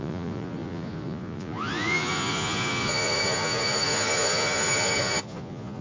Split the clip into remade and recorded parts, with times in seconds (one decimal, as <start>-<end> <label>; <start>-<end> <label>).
0.0-5.8 remade